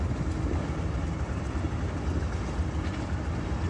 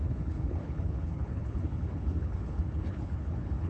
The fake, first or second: second